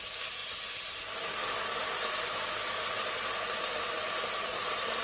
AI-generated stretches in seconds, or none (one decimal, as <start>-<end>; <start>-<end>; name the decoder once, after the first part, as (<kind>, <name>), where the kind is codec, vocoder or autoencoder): none